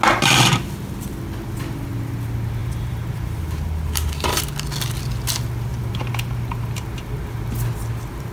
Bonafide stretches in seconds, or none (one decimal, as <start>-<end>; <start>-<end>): 0.0-2.6; 4.4-5.7; 7.5-8.3